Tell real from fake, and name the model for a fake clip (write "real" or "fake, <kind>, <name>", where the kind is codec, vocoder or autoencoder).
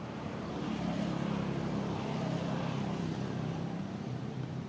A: fake, vocoder, BigVGAN v2